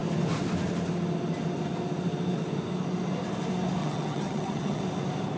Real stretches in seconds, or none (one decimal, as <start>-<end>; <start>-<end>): 0.0-3.8; 4.8-5.4